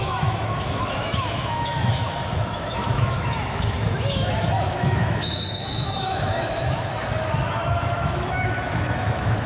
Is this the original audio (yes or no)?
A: no